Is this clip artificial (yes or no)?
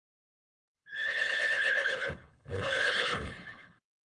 yes